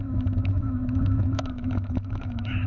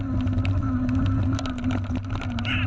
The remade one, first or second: first